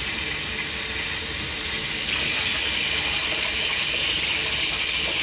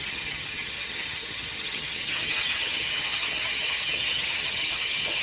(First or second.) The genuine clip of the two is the first